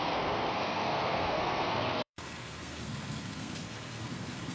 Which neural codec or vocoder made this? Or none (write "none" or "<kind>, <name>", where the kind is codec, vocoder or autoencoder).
codec, SNAC